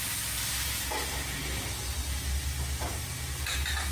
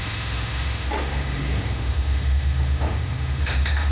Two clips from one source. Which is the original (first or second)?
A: first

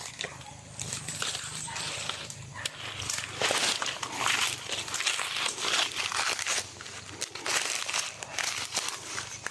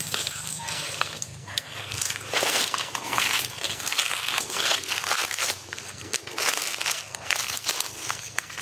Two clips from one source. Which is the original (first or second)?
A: first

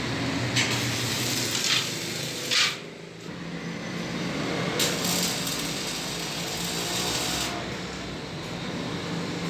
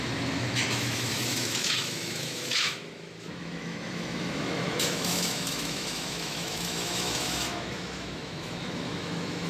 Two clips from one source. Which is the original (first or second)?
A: first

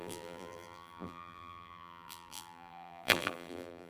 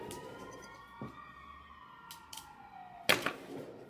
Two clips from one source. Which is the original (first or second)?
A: second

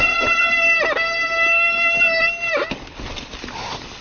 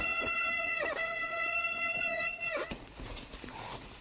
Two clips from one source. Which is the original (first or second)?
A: first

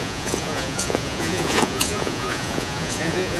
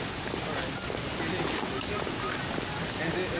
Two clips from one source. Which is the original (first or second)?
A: second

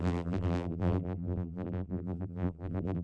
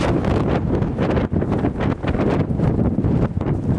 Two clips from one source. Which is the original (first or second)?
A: second